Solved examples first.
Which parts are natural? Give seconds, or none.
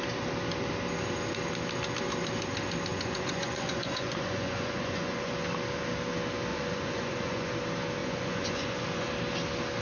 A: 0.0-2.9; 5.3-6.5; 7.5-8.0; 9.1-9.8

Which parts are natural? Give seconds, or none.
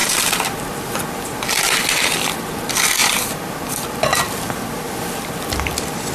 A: 2.3-3.0; 5.4-6.1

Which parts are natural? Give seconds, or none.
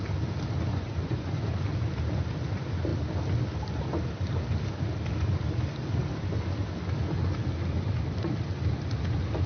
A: 0.0-0.7; 1.4-9.5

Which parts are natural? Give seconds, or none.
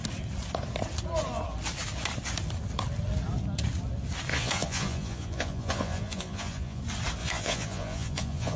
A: 0.0-4.3; 6.8-7.2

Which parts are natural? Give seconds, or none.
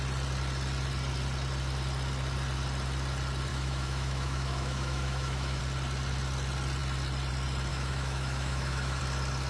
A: 0.0-3.5; 5.6-7.7; 9.0-9.5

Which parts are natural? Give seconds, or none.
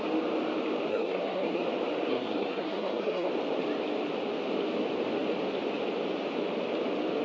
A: 0.0-0.9; 1.6-2.1; 3.3-7.2